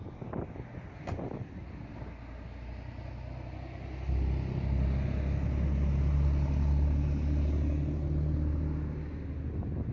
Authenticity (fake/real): real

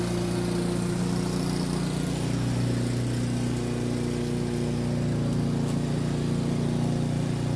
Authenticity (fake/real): real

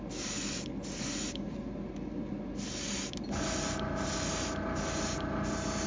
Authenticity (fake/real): real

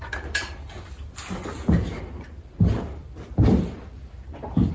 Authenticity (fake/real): real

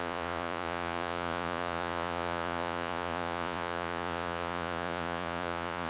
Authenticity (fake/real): fake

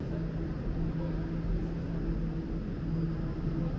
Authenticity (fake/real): real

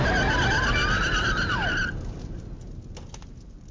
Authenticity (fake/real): real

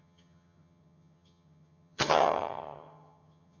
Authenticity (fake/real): fake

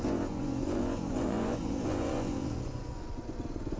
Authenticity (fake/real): fake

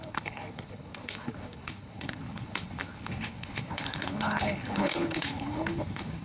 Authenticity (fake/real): fake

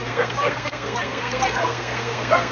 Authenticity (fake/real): fake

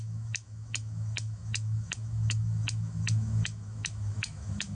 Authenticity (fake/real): fake